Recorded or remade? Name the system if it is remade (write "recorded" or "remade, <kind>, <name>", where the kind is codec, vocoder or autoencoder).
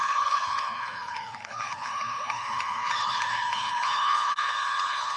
remade, codec, HILCodec